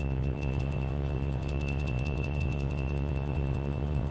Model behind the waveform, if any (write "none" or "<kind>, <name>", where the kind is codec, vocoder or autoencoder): vocoder, WaveNeXt